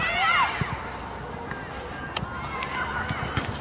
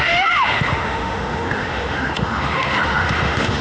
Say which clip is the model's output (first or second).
second